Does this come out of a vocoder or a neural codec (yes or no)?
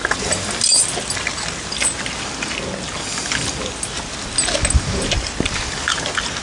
no